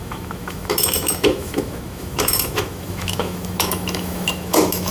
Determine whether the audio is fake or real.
fake